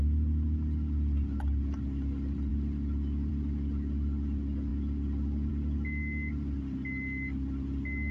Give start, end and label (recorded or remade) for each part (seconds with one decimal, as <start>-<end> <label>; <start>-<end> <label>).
0.0-8.1 recorded